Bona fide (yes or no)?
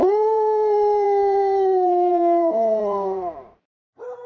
no